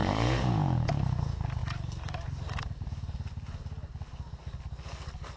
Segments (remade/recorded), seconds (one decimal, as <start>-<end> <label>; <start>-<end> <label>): 0.0-0.9 remade; 0.9-5.4 recorded